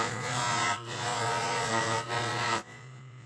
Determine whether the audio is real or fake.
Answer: fake